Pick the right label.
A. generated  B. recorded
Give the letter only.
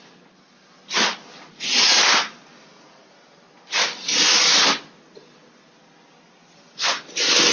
B